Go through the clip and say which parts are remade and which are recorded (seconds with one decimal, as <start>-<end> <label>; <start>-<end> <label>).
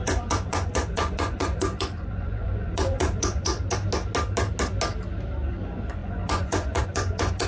0.0-3.5 remade; 3.5-5.5 recorded; 5.5-7.5 remade